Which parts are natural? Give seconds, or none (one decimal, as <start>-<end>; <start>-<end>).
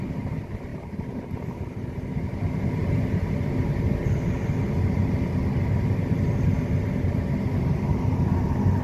0.0-0.7; 2.4-8.8